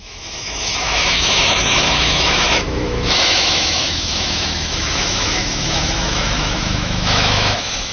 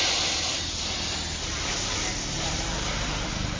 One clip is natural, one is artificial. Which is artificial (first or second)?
first